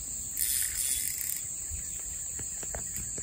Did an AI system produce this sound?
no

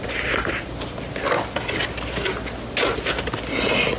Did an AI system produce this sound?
no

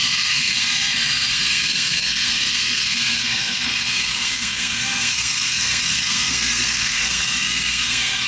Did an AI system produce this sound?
yes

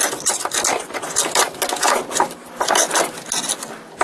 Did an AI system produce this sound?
no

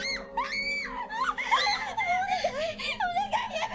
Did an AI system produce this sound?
no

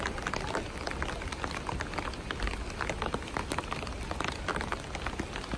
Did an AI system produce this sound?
no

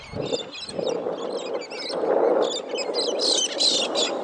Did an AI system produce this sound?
no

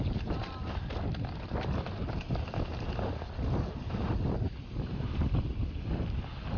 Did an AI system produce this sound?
no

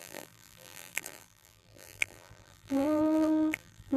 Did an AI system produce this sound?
yes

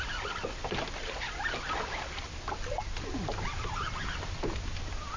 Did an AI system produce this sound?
no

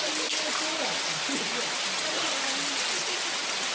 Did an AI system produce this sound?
no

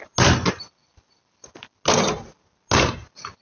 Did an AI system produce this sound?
no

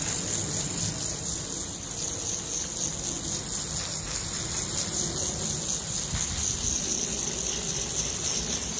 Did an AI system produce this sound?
no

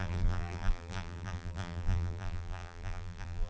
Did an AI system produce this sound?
yes